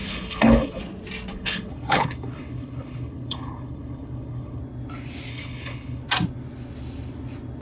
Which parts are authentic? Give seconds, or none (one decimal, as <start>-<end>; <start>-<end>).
0.8-1.3; 4.6-5.3; 6.0-7.6